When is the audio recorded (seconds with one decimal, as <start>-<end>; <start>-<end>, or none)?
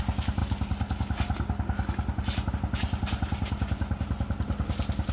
0.0-5.1